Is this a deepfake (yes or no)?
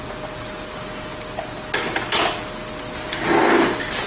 no